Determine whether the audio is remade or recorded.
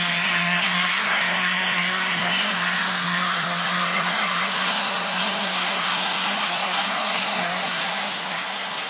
remade